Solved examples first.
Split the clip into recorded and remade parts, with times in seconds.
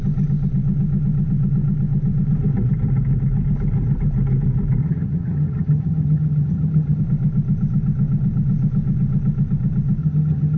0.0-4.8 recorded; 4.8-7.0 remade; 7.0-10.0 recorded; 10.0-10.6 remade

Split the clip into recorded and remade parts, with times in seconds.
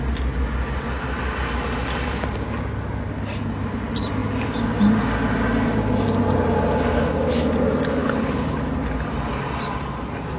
0.0-8.0 recorded; 8.0-8.6 remade; 8.6-10.4 recorded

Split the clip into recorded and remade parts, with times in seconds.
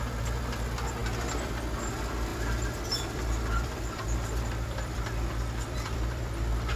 0.0-2.3 recorded; 2.3-6.8 remade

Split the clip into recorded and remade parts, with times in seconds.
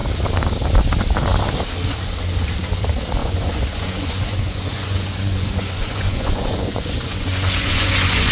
0.0-3.2 recorded; 3.2-8.3 remade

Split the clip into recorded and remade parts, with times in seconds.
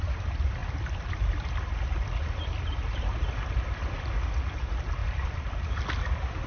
0.0-0.6 recorded; 0.6-4.0 remade; 4.0-5.0 recorded; 5.0-5.7 remade; 5.7-6.5 recorded